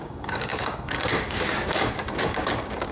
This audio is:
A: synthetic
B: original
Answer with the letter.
A